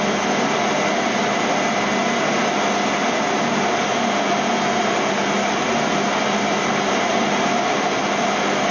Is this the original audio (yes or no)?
yes